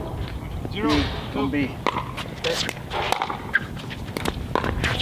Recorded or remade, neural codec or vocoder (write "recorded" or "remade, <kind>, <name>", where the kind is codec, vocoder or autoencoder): recorded